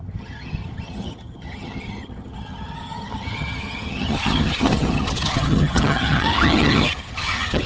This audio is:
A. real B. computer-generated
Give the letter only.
B